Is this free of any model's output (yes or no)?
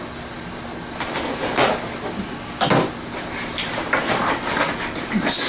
yes